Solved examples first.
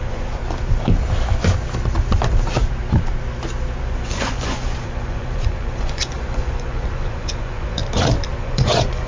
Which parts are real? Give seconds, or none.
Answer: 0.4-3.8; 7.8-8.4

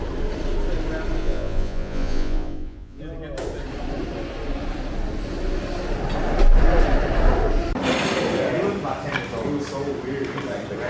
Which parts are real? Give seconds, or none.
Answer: 0.0-1.2; 3.0-10.9

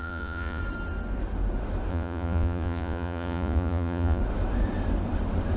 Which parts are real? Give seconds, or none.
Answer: 0.6-1.9; 4.2-5.6

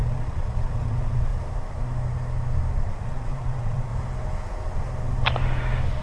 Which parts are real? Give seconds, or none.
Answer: 1.3-2.9; 3.9-6.0

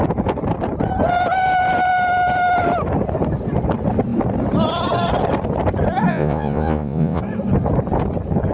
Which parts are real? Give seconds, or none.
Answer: 0.0-6.1; 7.2-8.5

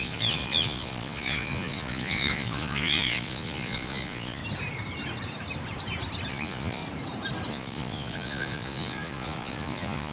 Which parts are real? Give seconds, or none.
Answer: 4.4-6.3; 6.8-7.5

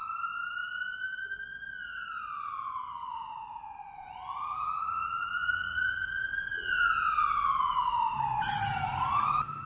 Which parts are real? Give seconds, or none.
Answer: 0.0-3.1; 6.7-9.7

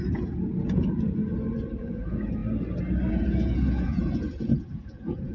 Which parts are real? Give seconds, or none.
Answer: 1.2-1.8; 2.4-3.1